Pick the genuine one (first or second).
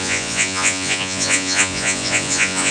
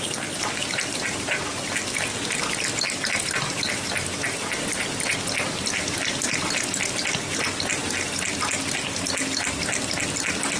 second